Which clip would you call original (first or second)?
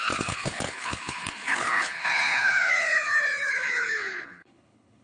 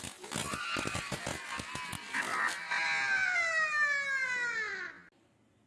second